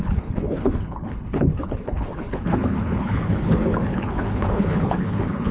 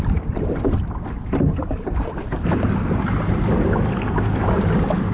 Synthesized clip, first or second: first